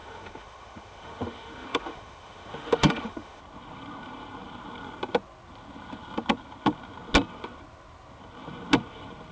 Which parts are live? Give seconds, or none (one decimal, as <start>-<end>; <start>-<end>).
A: 3.4-9.3